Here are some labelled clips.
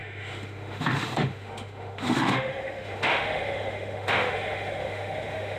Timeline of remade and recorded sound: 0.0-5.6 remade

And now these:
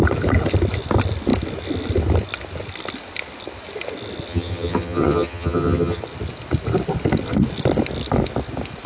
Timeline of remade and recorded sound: 0.0-4.3 recorded; 4.3-6.0 remade; 6.0-8.9 recorded

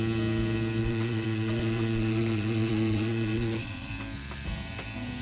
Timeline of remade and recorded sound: 0.0-0.8 recorded; 0.8-3.9 remade; 3.9-5.2 recorded

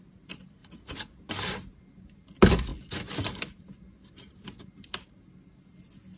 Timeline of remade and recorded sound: 0.0-6.2 recorded

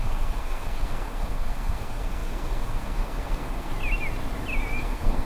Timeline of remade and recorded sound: 0.0-3.7 remade; 3.7-4.8 recorded; 4.8-5.3 remade